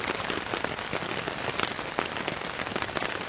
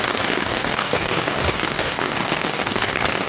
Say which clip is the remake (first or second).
second